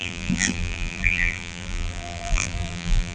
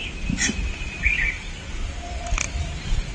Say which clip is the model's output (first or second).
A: first